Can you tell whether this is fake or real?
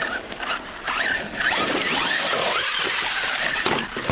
fake